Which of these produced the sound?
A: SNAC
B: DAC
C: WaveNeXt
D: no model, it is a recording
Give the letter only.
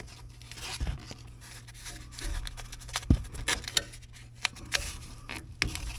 D